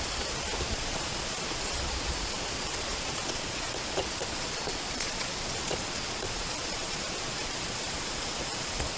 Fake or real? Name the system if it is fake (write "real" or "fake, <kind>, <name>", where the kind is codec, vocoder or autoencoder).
fake, vocoder, Vocos